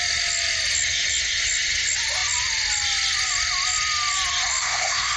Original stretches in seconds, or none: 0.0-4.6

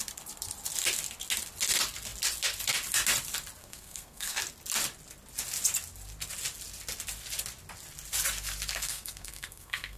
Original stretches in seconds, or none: 0.0-3.6; 4.4-8.7

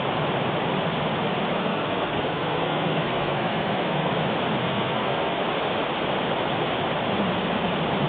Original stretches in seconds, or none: 0.0-1.6; 4.1-4.6; 5.4-8.1

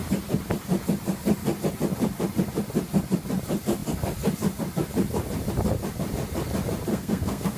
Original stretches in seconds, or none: 0.0-6.9

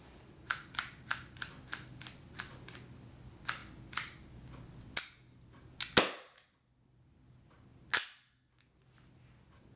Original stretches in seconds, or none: 0.0-9.8

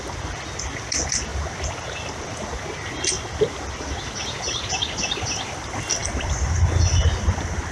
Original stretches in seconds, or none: 0.0-7.7

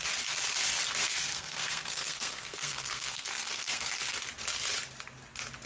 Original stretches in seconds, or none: 0.0-1.0; 3.9-5.7